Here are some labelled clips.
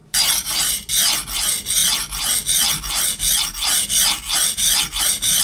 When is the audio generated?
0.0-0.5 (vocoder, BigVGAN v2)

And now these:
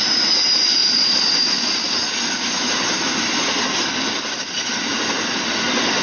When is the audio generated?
none

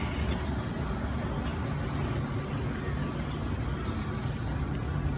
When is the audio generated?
none

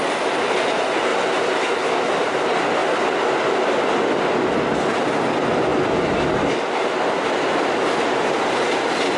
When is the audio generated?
none

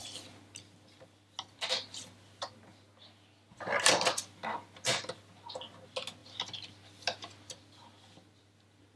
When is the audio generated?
none